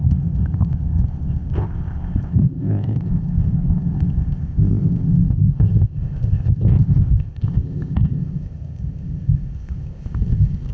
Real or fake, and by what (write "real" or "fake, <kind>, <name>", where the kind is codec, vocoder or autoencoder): fake, codec, ZipCodec